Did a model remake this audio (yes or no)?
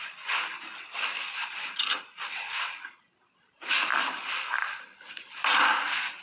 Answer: no